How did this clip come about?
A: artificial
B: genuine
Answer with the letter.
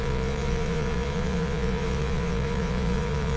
A